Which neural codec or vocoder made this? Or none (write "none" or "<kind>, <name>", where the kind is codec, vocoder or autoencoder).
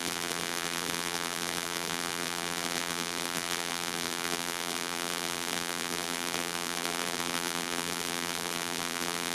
vocoder, BigVGAN v2